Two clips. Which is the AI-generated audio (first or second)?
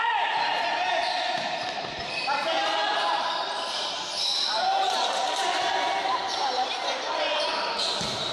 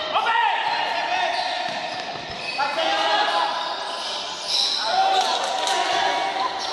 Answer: first